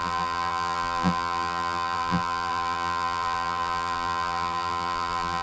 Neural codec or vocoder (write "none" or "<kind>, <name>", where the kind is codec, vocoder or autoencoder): vocoder, BigVGAN v2